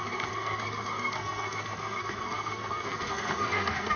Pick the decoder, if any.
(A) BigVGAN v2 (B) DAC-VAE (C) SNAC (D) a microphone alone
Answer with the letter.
C